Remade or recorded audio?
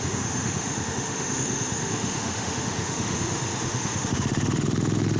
remade